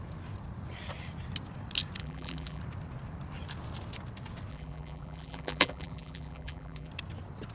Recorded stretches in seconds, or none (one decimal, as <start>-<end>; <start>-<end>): 0.0-2.0; 2.6-4.5; 6.9-7.5